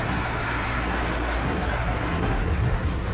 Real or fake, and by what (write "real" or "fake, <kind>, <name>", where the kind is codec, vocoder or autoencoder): fake, codec, SNAC